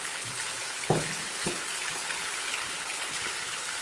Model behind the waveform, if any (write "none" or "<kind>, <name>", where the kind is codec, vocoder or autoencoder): codec, HILCodec